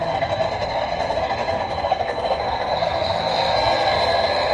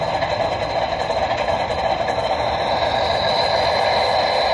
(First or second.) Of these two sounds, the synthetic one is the first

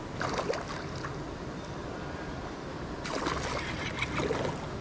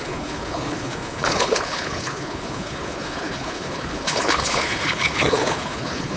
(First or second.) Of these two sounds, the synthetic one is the second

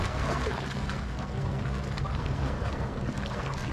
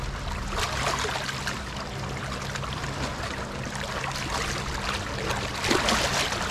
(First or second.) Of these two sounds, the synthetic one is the first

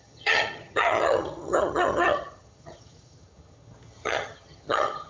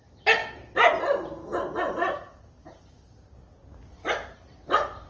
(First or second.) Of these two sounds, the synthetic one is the first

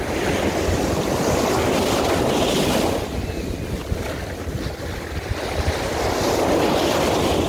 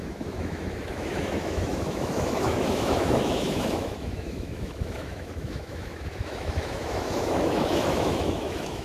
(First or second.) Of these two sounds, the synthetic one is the second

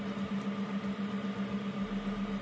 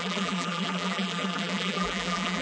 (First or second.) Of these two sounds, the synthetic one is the second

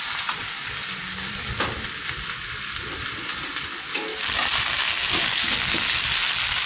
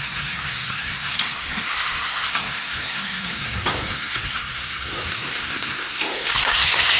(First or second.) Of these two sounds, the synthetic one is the second